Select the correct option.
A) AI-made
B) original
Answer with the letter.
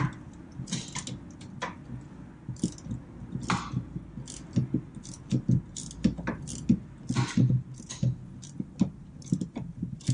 B